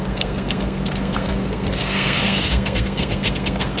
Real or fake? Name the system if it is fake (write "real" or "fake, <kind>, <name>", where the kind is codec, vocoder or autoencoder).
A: fake, codec, SNAC